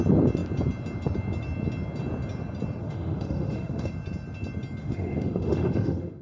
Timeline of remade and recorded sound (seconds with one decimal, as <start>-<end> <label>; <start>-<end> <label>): 0.0-2.8 recorded; 2.8-3.9 remade; 3.9-4.8 recorded; 4.8-6.2 remade